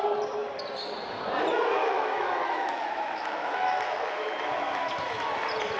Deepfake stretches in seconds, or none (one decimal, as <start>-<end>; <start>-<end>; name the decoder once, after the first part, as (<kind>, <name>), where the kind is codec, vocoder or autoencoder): 1.8-5.3 (autoencoder, DAC-VAE)